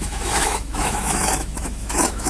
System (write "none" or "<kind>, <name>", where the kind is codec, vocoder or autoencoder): autoencoder, DAC-VAE